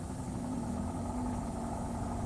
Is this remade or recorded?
remade